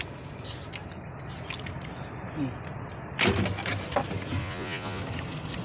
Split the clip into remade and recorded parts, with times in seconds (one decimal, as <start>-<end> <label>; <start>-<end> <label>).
0.0-4.4 recorded; 4.4-5.0 remade; 5.0-5.6 recorded